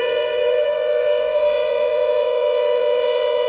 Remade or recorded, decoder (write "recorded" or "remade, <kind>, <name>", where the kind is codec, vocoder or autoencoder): remade, vocoder, Vocos